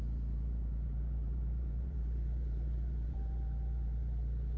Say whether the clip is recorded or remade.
remade